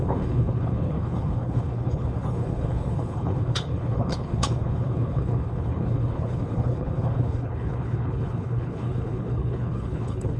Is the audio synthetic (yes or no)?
yes